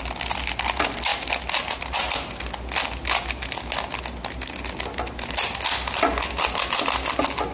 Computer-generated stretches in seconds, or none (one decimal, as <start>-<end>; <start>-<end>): none